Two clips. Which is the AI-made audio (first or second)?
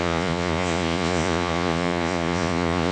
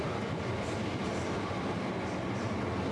first